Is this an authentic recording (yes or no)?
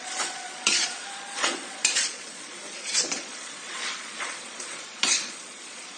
no